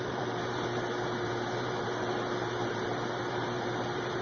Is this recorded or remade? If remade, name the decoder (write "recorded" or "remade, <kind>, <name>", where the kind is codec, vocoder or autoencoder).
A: remade, vocoder, BigVGAN v2